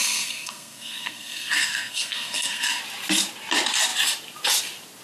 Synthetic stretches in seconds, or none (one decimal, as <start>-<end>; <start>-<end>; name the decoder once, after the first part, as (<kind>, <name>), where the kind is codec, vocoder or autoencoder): 0.0-2.8 (codec, SNAC)